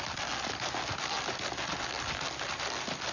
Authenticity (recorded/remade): recorded